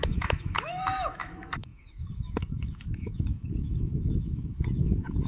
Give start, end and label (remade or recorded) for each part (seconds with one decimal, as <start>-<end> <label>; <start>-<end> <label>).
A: 0.0-5.3 remade